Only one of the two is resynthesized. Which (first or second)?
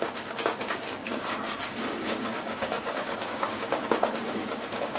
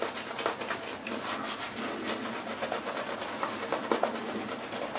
first